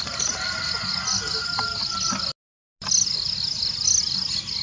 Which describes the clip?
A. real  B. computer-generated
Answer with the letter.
A